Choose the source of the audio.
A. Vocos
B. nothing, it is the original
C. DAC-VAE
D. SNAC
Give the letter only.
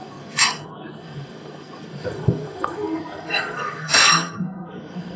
D